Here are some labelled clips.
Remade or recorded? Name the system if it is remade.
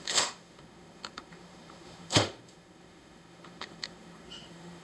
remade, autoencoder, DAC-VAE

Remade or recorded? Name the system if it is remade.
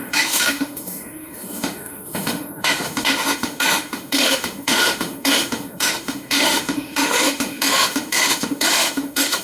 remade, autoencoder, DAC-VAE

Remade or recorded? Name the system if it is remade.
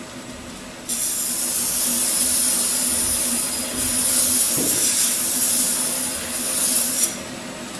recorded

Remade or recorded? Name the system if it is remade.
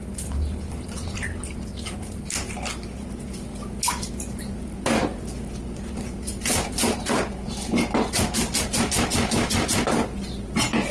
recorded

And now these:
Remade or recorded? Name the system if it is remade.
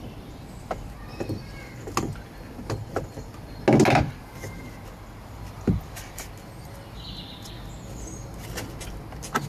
recorded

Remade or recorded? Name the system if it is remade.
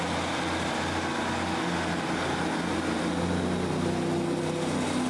recorded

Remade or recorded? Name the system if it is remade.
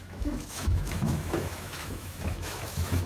remade, autoencoder, DAC-VAE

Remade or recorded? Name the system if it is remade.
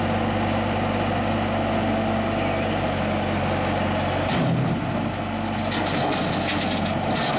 recorded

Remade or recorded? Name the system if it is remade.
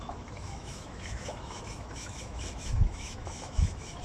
remade, autoencoder, DAC-VAE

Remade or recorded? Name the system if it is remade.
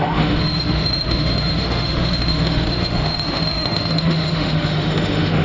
remade, autoencoder, DAC-VAE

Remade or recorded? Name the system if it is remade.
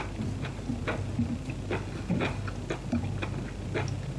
recorded